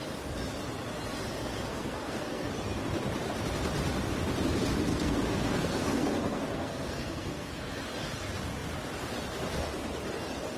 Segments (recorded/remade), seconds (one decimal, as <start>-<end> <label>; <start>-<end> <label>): 0.0-1.4 recorded; 1.4-2.5 remade; 2.5-4.9 recorded; 4.9-7.7 remade; 7.7-10.6 recorded